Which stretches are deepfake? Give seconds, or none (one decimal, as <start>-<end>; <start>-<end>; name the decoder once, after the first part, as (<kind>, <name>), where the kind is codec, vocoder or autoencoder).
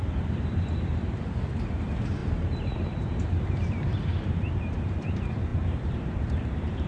0.0-6.9 (vocoder, BigVGAN v2)